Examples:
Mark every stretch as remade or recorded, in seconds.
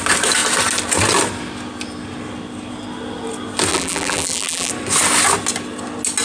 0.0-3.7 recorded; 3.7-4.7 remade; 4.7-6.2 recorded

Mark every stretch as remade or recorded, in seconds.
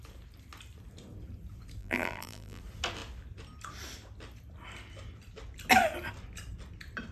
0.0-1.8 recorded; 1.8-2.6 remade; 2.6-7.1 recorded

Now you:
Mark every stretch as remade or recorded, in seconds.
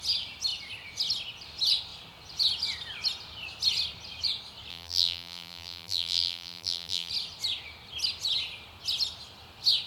0.0-4.7 recorded; 4.7-7.1 remade; 7.1-9.9 recorded